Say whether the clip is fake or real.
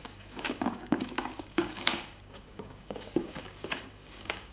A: fake